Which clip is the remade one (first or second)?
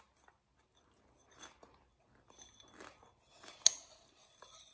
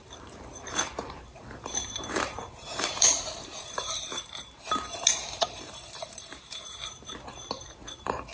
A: second